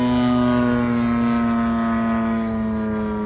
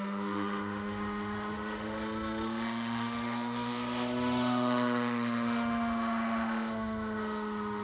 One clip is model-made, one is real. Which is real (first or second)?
first